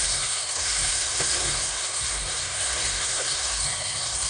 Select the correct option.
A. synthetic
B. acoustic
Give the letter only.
A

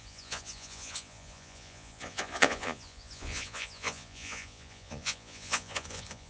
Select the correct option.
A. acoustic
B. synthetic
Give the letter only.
B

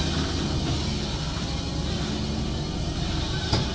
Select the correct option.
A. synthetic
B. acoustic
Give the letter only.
B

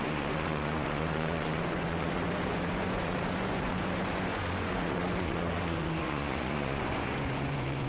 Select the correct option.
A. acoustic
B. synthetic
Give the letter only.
B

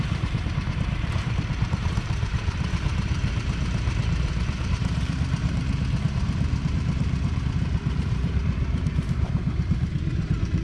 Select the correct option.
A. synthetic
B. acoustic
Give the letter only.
A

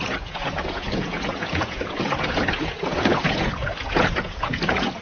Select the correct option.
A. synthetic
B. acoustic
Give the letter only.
A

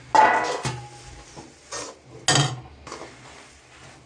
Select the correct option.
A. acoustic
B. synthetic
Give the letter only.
A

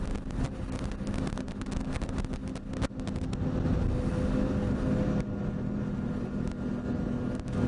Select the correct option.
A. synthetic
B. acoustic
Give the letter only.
B